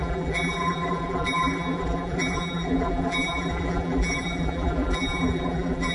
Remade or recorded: remade